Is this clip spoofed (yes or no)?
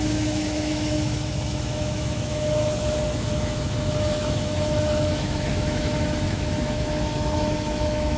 yes